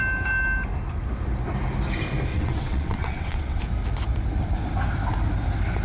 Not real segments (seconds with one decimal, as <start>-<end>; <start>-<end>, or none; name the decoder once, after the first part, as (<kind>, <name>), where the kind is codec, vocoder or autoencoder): 2.3-3.6 (vocoder, WaveNeXt)